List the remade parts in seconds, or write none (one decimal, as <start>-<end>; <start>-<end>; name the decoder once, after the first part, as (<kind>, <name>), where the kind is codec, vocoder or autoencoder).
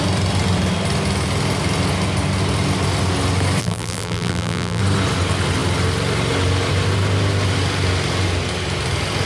3.6-4.8 (vocoder, BigVGAN v2)